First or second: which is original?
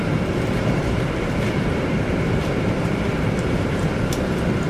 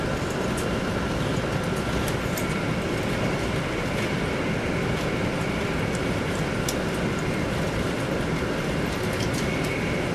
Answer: second